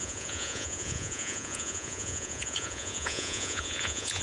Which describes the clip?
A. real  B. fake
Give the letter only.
B